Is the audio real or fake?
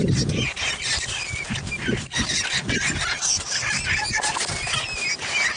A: real